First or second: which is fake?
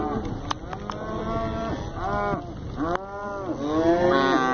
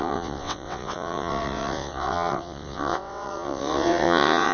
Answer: second